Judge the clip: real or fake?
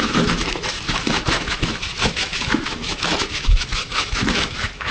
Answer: fake